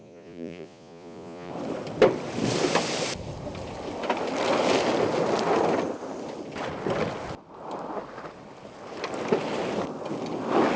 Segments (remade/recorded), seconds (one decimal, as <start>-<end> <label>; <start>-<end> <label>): 0.0-1.5 remade; 1.5-10.8 recorded